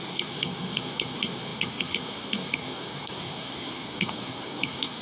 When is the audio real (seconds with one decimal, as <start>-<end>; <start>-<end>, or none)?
none